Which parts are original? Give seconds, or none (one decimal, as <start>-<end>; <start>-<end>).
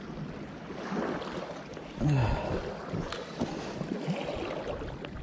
0.0-5.2